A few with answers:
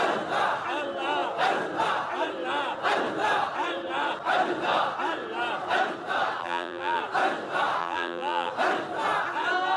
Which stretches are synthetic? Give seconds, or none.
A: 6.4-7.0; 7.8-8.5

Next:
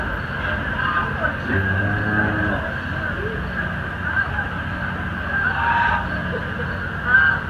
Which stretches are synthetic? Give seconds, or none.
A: none